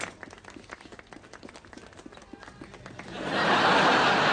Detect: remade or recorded recorded